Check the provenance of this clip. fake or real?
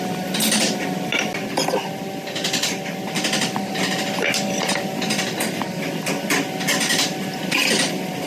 real